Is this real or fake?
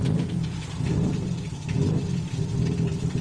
fake